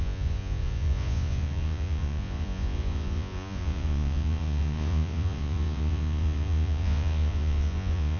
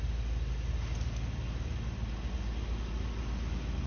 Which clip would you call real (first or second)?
second